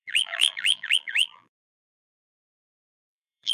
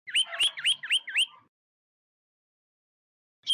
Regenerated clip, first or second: first